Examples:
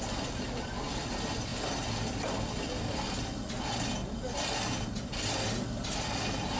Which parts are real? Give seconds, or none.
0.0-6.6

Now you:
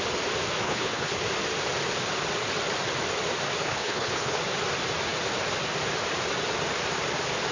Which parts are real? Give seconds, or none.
0.0-0.6; 1.1-3.6; 4.4-7.5

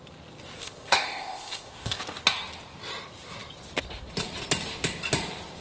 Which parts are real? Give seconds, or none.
0.0-0.6; 2.0-5.6

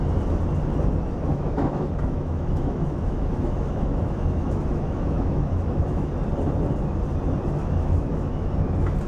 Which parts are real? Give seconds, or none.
0.0-1.3; 6.1-7.6; 8.5-9.1